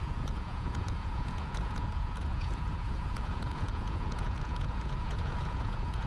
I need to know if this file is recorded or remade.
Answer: remade